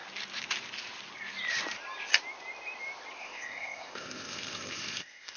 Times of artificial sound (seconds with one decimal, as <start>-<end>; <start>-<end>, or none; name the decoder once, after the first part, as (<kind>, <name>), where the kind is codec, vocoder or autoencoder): 3.2-5.4 (codec, ZipCodec)